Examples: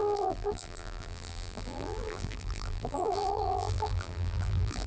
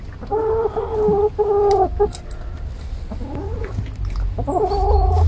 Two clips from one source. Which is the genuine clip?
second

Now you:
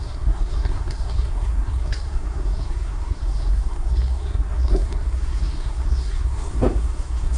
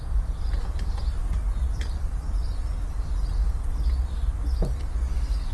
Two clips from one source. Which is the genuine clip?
second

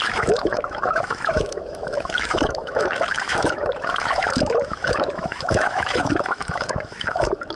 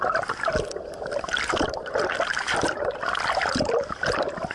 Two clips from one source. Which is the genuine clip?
second